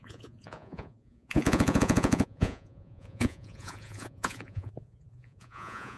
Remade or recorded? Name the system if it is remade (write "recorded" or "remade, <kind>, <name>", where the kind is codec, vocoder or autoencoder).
remade, vocoder, Vocos